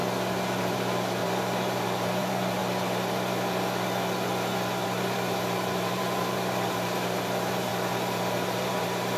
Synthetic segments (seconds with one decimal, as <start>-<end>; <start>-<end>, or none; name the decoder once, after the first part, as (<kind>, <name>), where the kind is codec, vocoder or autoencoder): 0.6-2.6 (vocoder, BigVGAN v2); 4.8-9.2